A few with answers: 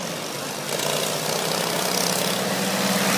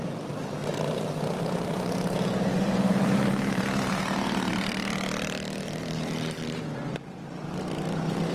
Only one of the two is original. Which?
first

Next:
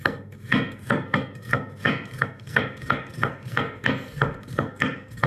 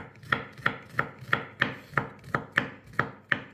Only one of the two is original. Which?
second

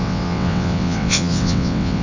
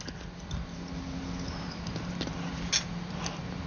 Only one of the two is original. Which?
second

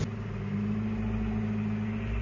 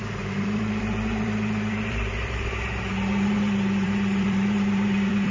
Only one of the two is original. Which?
first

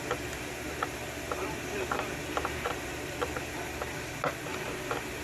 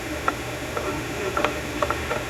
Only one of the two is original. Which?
first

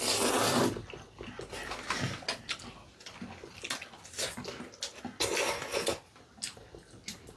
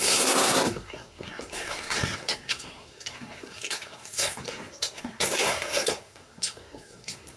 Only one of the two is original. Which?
first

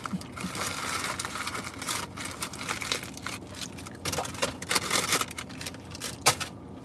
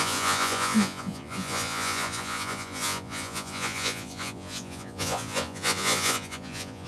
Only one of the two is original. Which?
first